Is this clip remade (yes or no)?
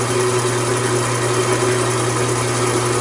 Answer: no